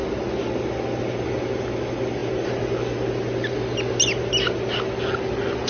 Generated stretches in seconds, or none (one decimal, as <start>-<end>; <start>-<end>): none